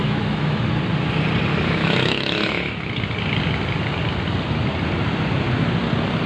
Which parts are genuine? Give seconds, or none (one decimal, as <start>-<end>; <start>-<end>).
0.6-1.5; 2.9-6.3

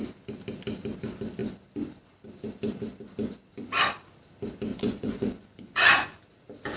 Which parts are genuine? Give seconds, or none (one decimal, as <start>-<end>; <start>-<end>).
0.0-4.7; 6.2-6.8

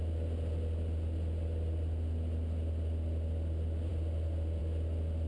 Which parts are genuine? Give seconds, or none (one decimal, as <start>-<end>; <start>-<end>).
0.0-5.3